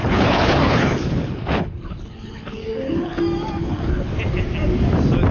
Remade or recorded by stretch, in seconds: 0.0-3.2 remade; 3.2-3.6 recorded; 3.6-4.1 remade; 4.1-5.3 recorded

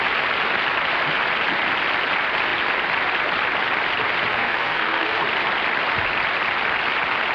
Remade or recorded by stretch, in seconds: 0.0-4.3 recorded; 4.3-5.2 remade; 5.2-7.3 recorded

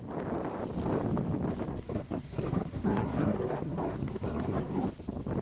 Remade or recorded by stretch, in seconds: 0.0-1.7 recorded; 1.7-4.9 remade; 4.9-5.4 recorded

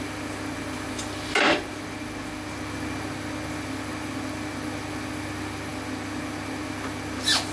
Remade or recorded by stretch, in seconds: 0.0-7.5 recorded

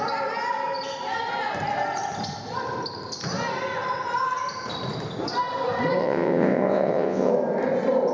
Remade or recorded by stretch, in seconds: 0.0-6.0 recorded; 6.0-7.3 remade; 7.3-8.1 recorded